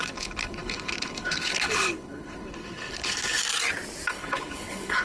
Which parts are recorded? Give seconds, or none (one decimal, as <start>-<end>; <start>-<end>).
3.4-4.1